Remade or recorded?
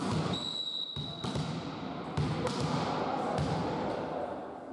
recorded